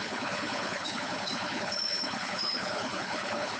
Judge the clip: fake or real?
fake